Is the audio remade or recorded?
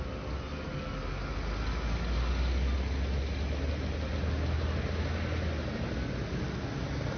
recorded